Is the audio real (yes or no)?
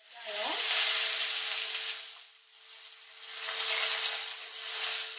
yes